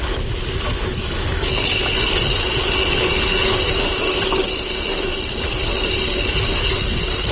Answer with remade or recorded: recorded